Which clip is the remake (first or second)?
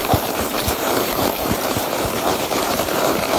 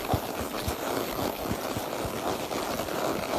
first